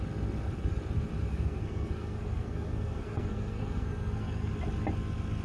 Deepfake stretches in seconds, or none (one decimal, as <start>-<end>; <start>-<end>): 1.3-4.5